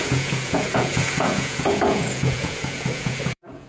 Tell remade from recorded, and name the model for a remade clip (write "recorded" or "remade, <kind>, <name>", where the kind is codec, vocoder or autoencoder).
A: remade, vocoder, Vocos